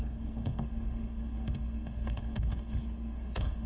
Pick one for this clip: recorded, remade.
remade